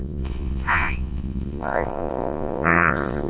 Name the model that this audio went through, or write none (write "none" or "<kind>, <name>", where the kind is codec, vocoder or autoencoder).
vocoder, Vocos